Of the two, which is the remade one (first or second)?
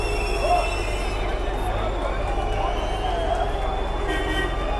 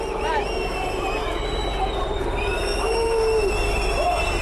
second